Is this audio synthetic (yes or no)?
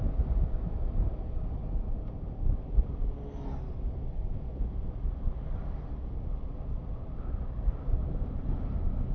no